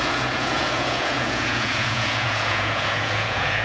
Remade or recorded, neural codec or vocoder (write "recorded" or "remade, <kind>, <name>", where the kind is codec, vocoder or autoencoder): remade, vocoder, Vocos